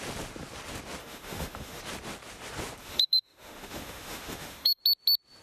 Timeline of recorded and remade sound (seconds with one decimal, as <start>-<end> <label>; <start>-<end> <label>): 0.0-1.0 recorded; 1.0-1.8 remade; 1.8-2.8 recorded; 2.8-4.8 remade; 4.8-5.4 recorded